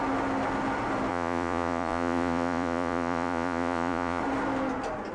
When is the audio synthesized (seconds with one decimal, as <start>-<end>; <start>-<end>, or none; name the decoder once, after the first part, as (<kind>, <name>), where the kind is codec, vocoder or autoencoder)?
1.1-4.2 (vocoder, Vocos)